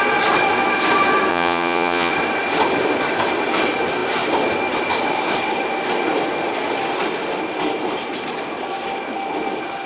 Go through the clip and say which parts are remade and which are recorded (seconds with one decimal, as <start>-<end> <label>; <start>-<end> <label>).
0.0-1.3 recorded; 1.3-2.1 remade; 2.1-9.9 recorded